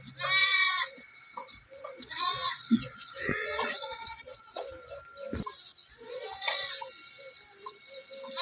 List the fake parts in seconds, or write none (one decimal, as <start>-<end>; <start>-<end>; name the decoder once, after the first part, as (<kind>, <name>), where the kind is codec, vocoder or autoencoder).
0.4-4.7 (vocoder, Vocos); 5.8-6.7